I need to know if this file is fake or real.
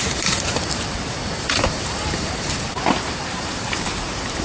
fake